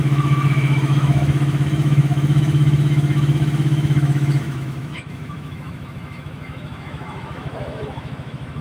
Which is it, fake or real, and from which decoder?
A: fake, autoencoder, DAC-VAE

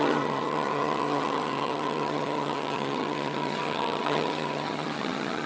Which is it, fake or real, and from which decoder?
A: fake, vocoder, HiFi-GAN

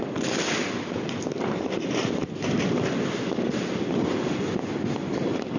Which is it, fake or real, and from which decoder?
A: real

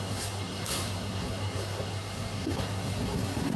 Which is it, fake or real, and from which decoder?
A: fake, codec, SNAC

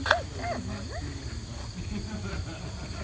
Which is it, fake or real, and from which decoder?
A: real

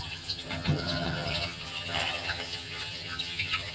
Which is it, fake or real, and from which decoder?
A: fake, vocoder, HiFi-GAN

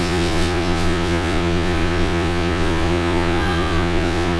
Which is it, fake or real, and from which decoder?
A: fake, vocoder, Vocos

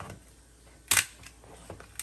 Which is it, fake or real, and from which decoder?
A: real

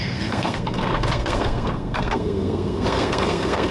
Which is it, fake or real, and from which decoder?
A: fake, codec, SNAC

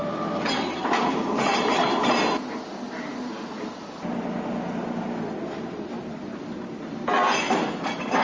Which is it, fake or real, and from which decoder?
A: real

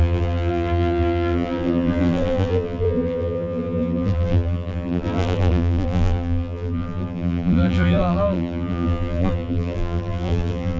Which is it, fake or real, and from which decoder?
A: fake, vocoder, BigVGAN v2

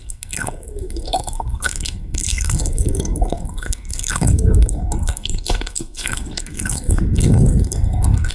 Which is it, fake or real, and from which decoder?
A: fake, codec, SNAC